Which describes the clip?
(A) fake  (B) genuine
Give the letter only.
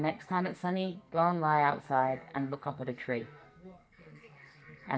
A